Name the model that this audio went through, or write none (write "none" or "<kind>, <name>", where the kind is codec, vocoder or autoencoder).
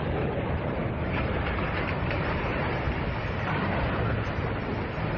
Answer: vocoder, BigVGAN v2